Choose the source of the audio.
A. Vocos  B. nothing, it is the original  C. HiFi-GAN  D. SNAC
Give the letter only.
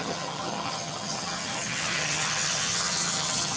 C